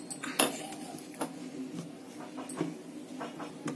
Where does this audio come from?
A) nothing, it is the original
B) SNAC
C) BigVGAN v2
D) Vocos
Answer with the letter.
A